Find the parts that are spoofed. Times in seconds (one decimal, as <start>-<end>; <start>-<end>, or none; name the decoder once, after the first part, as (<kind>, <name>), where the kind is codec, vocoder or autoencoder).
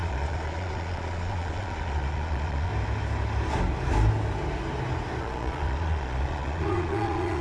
0.0-2.7 (vocoder, Vocos); 5.2-7.4